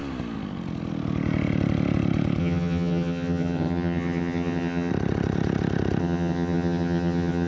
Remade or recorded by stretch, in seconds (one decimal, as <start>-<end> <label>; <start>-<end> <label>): 0.0-2.4 recorded; 2.4-4.9 remade; 4.9-6.0 recorded; 6.0-7.5 remade